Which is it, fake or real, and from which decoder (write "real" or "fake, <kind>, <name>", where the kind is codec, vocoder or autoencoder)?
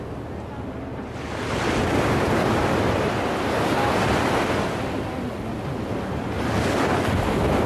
real